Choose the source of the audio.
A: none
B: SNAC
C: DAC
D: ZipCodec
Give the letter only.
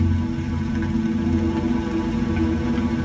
A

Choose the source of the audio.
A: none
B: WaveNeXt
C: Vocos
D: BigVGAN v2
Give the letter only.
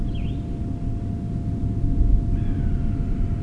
A